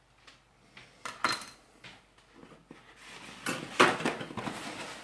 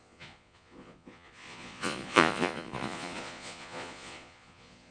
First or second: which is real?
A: first